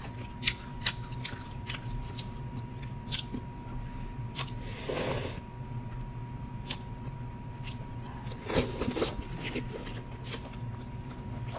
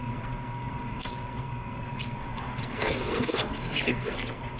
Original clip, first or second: first